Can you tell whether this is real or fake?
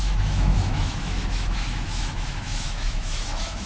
fake